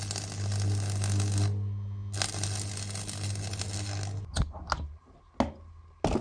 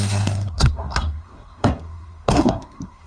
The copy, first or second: second